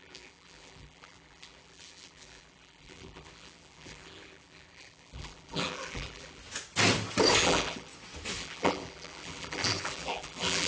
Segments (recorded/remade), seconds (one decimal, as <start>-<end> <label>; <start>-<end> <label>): 0.0-6.4 remade; 6.4-7.4 recorded; 7.4-7.9 remade; 7.9-8.4 recorded; 8.4-10.7 remade